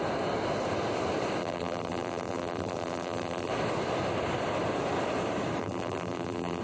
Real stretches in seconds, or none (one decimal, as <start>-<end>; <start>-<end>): 0.0-1.4; 3.5-5.6